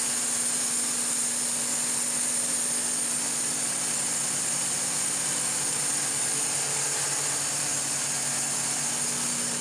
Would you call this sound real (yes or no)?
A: yes